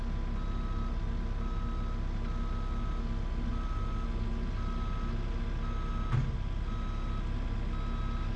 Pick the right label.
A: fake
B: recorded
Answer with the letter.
B